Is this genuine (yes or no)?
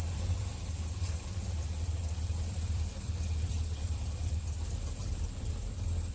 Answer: no